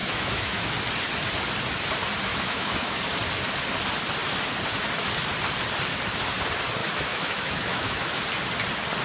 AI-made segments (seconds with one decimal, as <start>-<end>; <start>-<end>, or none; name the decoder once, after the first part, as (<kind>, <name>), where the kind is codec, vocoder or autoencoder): 0.0-0.7 (autoencoder, DAC-VAE); 2.3-3.0; 6.8-8.2